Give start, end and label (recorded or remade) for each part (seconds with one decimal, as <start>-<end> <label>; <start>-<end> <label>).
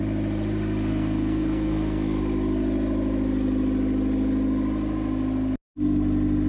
0.0-0.9 recorded; 0.9-2.2 remade; 2.2-6.5 recorded